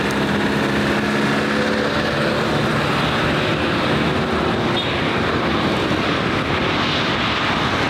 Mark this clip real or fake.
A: real